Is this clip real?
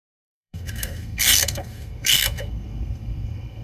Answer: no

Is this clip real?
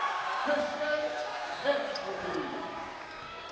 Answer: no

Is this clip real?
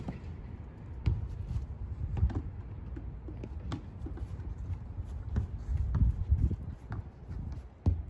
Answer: yes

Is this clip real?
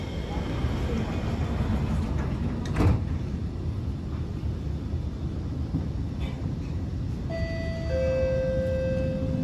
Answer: yes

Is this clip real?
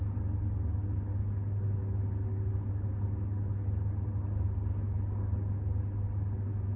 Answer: yes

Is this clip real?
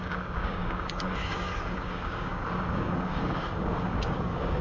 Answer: no